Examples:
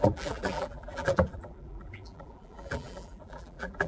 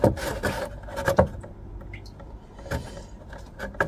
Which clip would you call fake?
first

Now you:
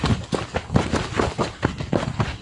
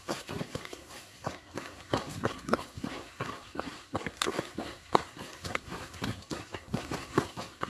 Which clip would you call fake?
second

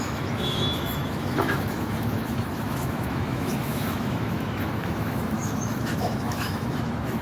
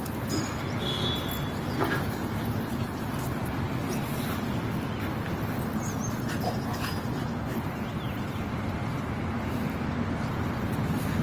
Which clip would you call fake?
first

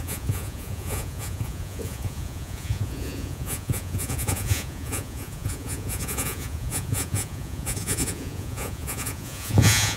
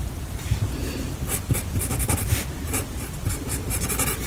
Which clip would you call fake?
first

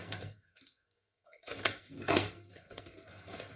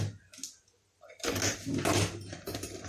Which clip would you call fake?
first